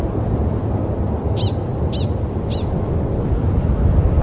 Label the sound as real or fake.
real